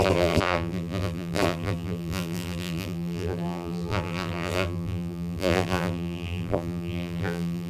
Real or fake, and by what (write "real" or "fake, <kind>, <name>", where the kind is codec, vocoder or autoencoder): fake, vocoder, BigVGAN v2